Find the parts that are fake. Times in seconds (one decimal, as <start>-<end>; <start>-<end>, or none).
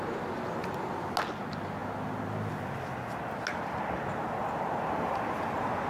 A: 4.4-4.9